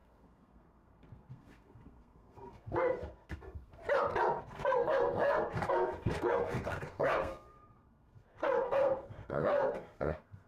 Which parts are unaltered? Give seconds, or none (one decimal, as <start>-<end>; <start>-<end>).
3.8-4.4